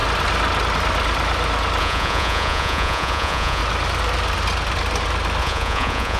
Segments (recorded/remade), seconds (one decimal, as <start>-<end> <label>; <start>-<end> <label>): 0.0-1.8 recorded; 1.8-3.6 remade; 3.6-5.4 recorded; 5.4-6.2 remade